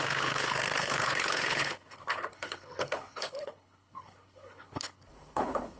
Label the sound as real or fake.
fake